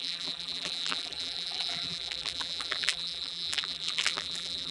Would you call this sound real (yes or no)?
no